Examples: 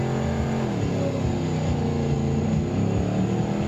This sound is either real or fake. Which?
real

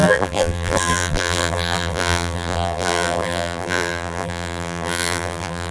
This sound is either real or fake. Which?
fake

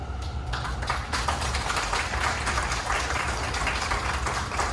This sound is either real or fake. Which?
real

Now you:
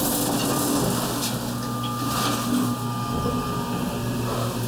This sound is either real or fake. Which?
real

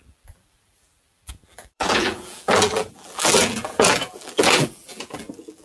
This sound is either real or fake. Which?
fake